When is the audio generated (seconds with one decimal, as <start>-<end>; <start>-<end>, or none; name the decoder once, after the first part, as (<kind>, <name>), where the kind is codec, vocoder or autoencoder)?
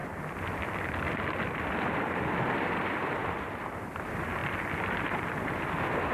none